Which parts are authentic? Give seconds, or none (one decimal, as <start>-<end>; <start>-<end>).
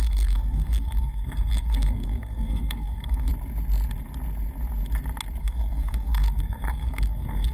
3.3-5.4